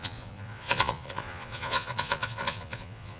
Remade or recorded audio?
remade